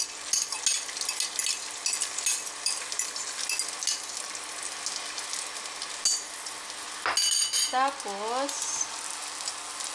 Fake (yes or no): no